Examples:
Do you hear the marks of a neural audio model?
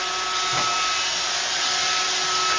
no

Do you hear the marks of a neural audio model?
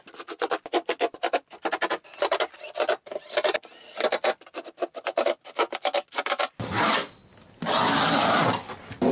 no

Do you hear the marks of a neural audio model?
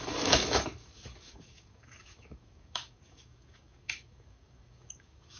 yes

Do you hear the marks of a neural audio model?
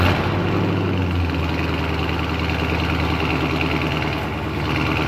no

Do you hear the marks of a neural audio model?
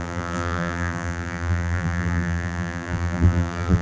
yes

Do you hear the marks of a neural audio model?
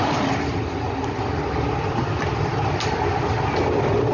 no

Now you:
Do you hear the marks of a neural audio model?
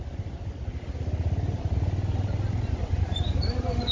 no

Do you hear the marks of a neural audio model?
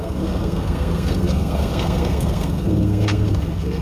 yes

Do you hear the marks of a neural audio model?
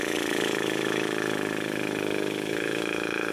yes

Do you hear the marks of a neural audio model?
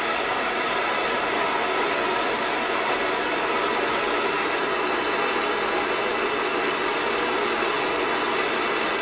no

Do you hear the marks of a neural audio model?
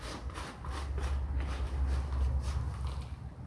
no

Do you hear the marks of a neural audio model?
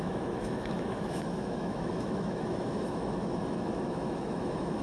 yes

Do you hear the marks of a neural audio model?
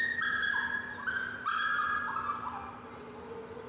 no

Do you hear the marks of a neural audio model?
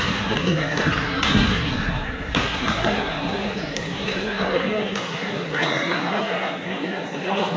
yes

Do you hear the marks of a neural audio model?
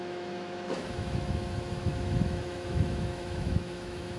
yes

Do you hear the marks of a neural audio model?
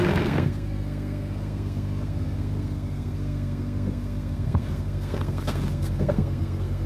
yes